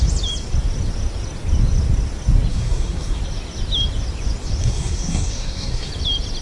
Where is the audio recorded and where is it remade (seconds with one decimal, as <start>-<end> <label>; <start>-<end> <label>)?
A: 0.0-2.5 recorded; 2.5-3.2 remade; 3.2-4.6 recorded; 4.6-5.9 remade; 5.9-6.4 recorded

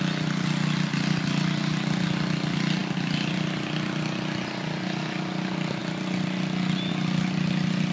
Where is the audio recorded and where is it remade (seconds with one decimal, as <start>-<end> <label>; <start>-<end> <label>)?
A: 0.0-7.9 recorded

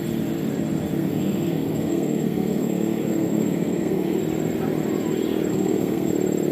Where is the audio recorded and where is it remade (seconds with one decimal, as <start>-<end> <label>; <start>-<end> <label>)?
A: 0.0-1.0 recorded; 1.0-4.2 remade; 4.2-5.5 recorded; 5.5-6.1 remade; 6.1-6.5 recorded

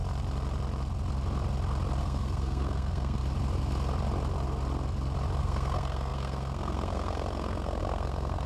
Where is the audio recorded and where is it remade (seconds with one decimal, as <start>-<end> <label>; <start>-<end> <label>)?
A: 0.0-2.0 recorded; 2.0-3.2 remade; 3.2-5.4 recorded; 5.4-8.5 remade

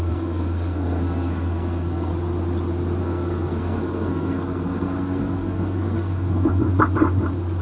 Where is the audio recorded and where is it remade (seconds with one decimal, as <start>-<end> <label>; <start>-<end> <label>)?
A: 0.0-2.1 remade; 2.1-3.0 recorded; 3.0-6.7 remade; 6.7-7.6 recorded